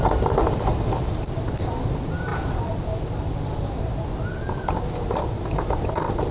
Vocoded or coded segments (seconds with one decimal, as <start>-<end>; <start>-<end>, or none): 2.3-4.0

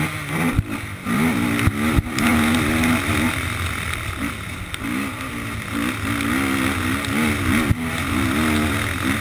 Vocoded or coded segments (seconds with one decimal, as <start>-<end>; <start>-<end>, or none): none